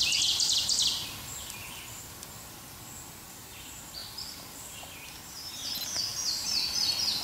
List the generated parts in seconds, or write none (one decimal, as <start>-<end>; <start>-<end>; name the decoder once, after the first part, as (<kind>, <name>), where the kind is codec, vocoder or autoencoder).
none